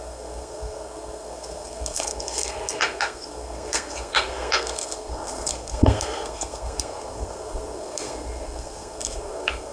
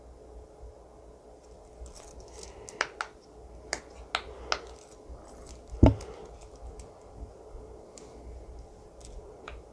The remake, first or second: first